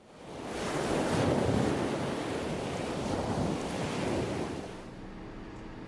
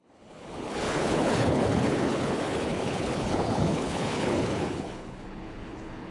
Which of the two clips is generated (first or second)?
second